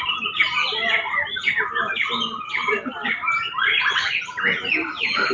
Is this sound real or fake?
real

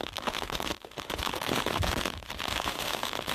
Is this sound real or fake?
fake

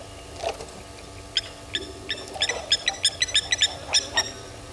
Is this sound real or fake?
real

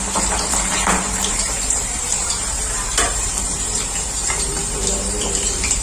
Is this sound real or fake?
fake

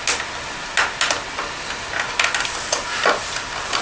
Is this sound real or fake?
real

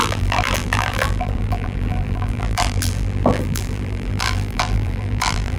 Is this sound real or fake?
fake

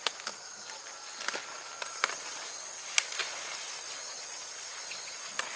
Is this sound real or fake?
real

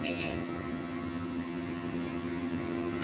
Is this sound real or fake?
fake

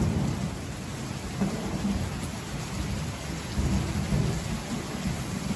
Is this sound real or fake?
real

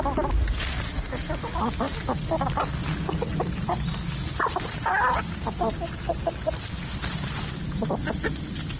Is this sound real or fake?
real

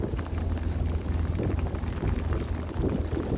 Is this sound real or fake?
real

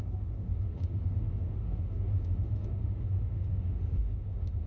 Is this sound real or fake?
fake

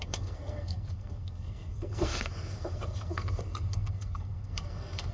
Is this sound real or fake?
fake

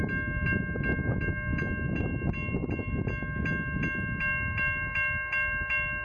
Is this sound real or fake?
real